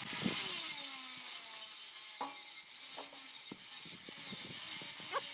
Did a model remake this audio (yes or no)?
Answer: no